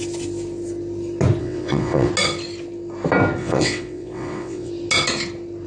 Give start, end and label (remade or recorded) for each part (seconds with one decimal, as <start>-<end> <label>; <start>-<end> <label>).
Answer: 0.0-1.4 recorded; 1.4-2.1 remade; 2.1-3.4 recorded; 3.4-4.7 remade; 4.7-5.7 recorded